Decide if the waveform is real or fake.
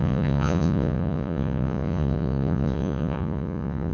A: fake